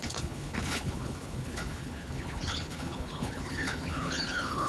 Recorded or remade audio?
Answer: remade